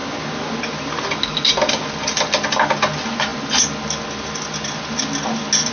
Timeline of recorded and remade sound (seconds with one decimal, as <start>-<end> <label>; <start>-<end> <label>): 0.0-5.7 recorded